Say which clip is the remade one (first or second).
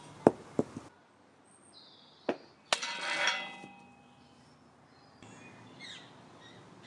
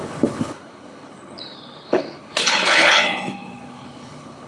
second